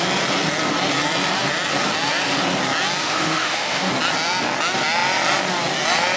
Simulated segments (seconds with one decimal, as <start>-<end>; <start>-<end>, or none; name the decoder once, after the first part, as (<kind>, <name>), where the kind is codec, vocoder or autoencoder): 3.0-3.9 (autoencoder, DAC-VAE)